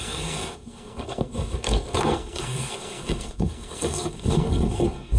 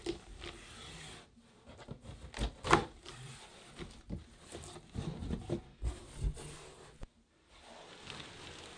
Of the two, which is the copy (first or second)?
first